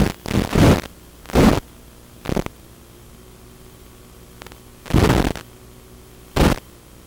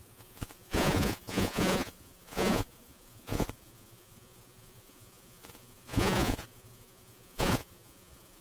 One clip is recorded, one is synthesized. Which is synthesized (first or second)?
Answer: second